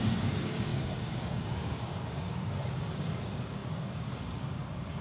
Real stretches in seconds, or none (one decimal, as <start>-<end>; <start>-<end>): none